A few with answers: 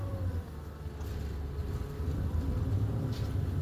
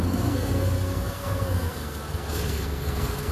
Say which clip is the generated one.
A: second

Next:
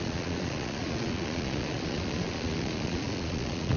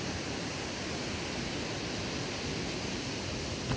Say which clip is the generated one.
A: first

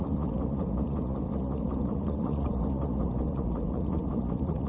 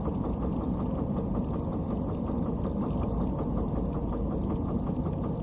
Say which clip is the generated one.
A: first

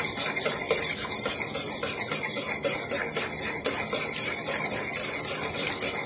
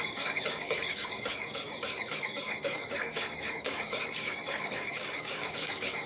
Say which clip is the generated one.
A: second